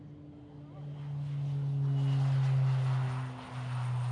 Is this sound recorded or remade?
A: recorded